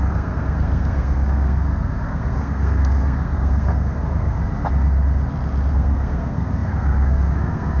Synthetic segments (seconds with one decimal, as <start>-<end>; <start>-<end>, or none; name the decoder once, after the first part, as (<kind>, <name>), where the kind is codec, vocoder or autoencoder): 0.0-4.4 (codec, SNAC); 5.7-7.8